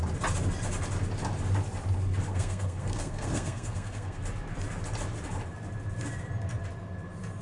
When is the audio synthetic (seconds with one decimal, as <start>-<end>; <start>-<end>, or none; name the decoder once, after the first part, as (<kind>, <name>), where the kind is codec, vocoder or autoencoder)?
2.3-4.2 (codec, SNAC)

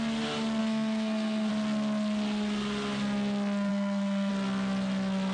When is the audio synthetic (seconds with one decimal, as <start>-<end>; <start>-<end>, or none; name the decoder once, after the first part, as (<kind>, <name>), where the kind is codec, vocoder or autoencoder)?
0.6-1.5 (codec, SNAC); 3.7-4.3

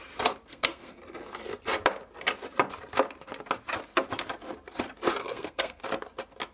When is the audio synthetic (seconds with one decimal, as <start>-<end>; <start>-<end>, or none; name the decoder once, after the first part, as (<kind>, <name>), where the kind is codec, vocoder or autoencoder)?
0.5-1.0 (codec, SNAC); 5.2-5.8

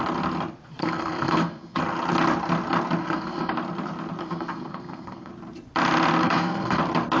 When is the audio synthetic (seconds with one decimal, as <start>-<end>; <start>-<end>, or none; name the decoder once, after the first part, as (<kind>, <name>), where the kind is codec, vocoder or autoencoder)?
0.8-1.8 (codec, SNAC); 3.0-3.5; 4.2-5.3; 6.2-6.8